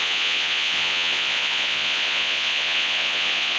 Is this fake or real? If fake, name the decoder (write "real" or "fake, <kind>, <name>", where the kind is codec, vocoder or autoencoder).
fake, vocoder, Vocos